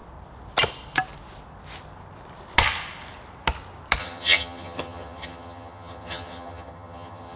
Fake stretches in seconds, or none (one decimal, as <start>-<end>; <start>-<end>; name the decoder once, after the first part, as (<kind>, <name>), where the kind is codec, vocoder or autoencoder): 4.0-7.4 (vocoder, HiFi-GAN)